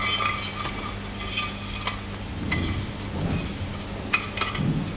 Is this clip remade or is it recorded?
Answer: recorded